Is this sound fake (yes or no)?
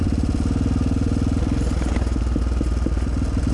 no